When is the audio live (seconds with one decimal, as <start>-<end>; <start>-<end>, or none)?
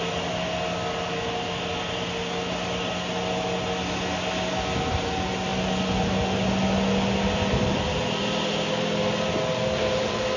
0.0-10.4